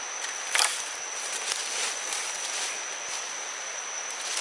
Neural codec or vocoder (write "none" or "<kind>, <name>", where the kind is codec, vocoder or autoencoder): none